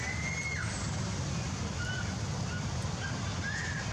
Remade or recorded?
recorded